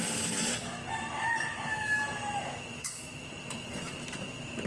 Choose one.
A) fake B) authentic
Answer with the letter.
A